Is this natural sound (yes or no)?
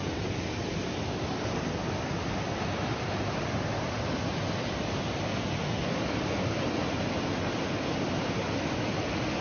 yes